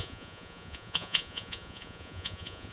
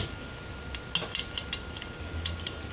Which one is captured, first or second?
second